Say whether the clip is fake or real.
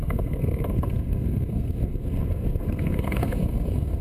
fake